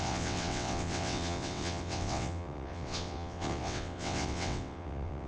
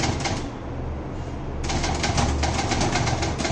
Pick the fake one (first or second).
first